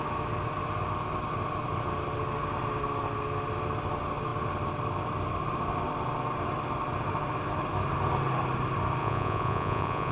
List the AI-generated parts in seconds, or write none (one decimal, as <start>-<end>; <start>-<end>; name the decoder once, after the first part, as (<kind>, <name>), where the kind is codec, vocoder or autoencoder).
9.0-10.1 (vocoder, Vocos)

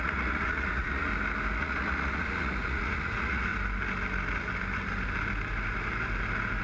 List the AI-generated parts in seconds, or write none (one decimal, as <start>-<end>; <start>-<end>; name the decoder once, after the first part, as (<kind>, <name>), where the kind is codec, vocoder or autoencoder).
0.0-1.1 (vocoder, Vocos); 1.6-3.5

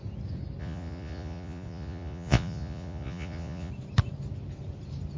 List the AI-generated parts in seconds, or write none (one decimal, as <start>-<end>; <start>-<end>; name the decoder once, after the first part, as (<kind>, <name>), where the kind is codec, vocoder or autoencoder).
0.6-3.7 (vocoder, Vocos)